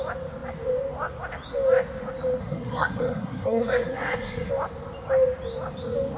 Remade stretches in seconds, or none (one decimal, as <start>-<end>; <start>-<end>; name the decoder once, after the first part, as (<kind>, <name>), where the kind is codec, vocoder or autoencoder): 2.4-4.5 (codec, SNAC)